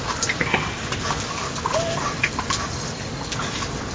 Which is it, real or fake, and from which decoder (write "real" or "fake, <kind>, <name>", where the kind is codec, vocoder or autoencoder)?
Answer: real